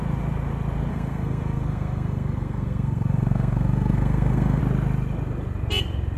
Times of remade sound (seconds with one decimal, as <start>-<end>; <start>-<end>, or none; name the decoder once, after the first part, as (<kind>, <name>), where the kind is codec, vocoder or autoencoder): 0.9-4.6 (codec, SNAC)

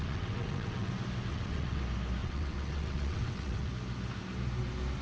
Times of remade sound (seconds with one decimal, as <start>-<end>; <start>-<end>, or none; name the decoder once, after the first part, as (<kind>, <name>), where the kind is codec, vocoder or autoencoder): 0.0-0.9 (vocoder, WaveNeXt); 1.3-1.8; 2.2-3.7